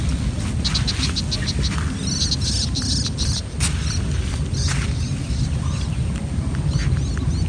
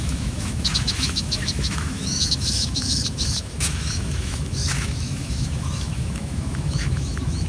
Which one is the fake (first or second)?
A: second